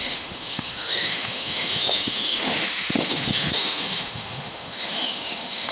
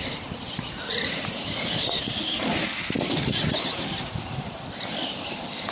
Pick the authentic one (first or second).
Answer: second